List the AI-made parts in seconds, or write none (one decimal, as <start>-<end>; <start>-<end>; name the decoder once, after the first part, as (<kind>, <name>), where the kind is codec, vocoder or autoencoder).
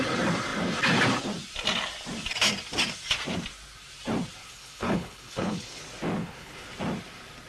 4.4-5.8 (codec, HILCodec); 6.2-6.7